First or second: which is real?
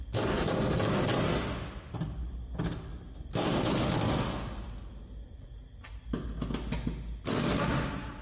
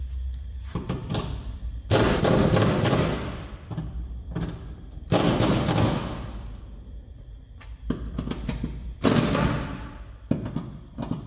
first